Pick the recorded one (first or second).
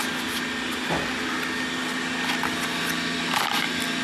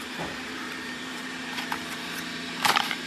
first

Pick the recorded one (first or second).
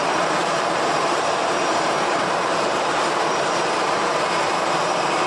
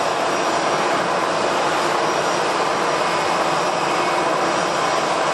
second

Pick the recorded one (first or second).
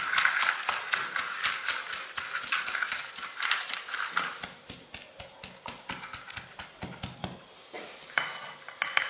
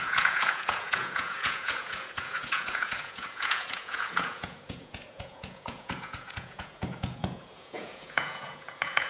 first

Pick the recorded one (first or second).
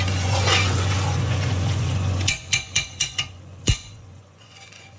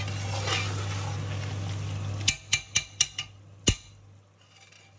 second